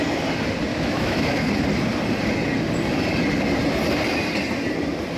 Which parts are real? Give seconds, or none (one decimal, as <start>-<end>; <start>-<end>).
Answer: 0.0-0.7; 1.5-5.2